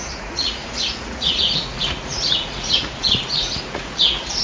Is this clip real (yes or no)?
no